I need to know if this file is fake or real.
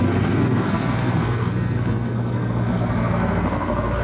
fake